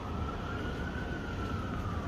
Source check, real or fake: real